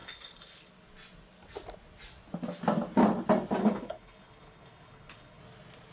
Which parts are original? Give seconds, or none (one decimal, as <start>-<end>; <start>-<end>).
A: 0.7-3.6; 5.4-5.9